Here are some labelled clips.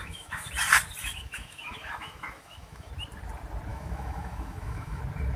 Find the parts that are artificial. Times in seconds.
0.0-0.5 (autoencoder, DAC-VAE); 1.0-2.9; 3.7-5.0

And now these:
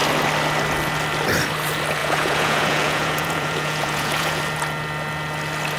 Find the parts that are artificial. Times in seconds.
2.0-4.4 (vocoder, Vocos)

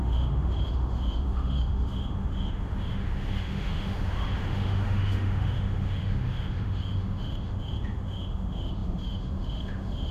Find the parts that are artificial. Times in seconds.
0.0-10.1 (autoencoder, DAC-VAE)

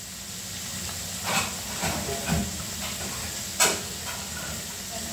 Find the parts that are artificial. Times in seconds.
none

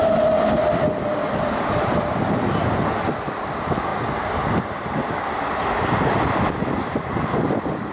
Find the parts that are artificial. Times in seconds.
none

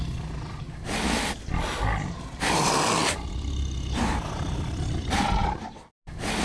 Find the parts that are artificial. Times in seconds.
none